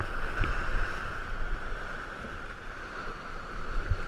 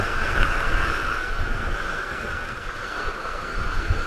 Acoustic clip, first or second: first